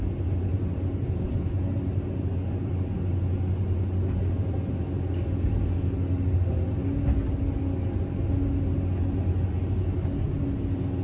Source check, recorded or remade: recorded